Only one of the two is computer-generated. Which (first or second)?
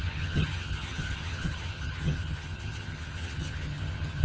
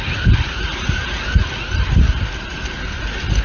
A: first